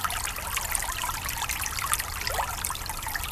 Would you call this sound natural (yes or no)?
yes